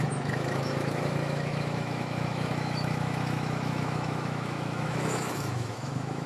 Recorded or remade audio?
remade